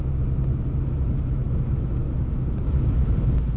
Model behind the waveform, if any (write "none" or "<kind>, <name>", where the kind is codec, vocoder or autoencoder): vocoder, BigVGAN v2